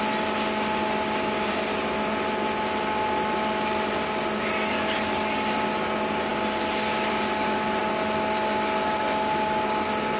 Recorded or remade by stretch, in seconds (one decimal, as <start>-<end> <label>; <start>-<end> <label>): 0.0-10.2 recorded